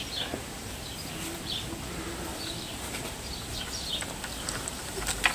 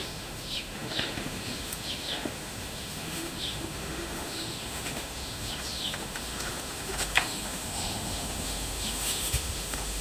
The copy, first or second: second